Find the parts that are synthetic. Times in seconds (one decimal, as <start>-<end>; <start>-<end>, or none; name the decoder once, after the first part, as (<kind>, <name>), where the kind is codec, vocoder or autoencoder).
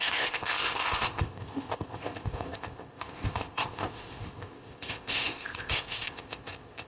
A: 0.0-6.9 (codec, ZipCodec)